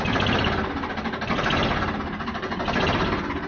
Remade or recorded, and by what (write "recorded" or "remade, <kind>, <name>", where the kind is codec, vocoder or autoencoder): recorded